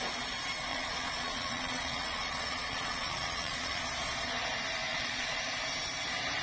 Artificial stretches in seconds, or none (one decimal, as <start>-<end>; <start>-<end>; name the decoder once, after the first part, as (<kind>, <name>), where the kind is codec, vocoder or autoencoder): 0.7-3.8 (vocoder, Vocos); 4.9-5.4